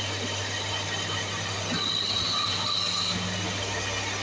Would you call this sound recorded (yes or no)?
yes